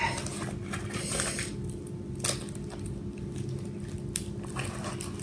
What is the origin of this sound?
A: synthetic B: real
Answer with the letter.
B